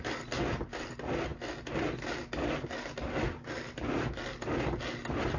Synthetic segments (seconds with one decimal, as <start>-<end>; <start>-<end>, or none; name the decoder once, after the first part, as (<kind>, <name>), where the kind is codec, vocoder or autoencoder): none